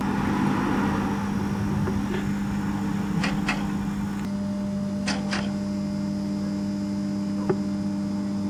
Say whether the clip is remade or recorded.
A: recorded